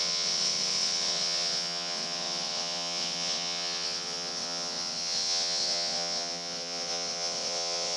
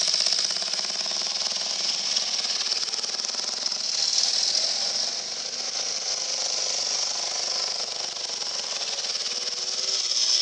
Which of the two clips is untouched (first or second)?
second